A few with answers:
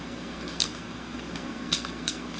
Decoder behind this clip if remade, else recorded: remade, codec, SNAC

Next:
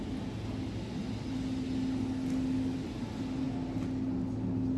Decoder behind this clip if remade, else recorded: recorded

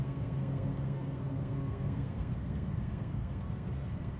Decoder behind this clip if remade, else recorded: remade, codec, SNAC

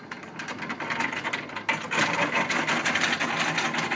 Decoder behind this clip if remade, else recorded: recorded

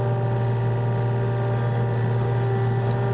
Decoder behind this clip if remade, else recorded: recorded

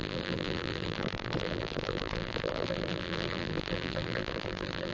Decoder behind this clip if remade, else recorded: remade, vocoder, BigVGAN v2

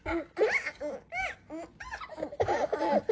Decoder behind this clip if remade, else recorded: recorded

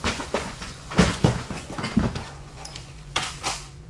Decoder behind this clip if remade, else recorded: remade, vocoder, Vocos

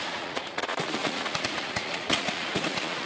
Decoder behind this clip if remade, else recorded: remade, vocoder, Vocos